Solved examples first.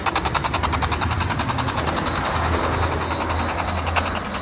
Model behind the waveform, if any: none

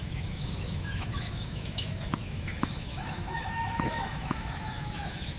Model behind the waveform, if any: autoencoder, DAC-VAE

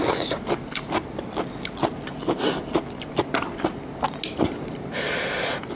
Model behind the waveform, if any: none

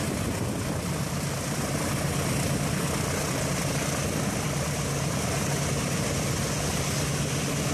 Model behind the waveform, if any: none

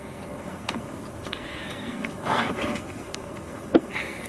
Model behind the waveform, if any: codec, SNAC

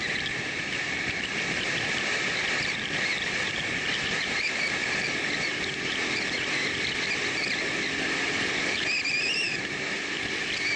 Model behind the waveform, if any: none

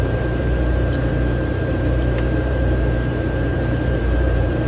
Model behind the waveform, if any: vocoder, BigVGAN v2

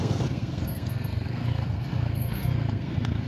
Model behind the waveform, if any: codec, SNAC